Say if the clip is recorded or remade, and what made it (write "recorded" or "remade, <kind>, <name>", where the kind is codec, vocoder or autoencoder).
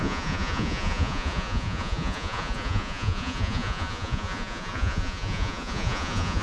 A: remade, vocoder, Vocos